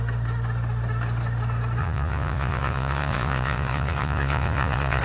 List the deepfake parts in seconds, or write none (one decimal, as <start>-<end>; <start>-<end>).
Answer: 1.8-5.0